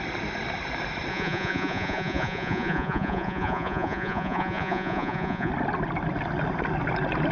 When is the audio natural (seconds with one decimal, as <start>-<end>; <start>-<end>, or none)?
0.0-1.1; 5.5-7.3